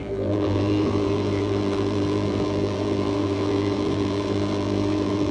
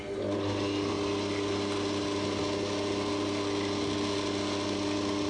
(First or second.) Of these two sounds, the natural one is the second